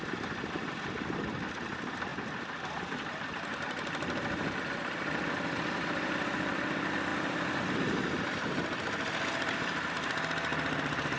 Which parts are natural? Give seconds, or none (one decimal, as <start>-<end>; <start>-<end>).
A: 2.1-2.7; 7.1-7.6; 10.5-11.2